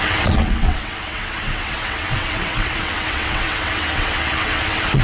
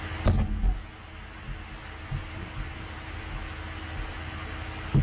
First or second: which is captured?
second